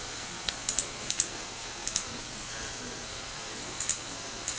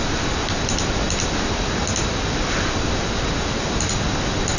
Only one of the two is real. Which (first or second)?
second